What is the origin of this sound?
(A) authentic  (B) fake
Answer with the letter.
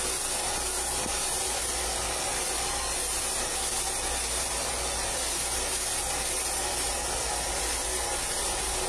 A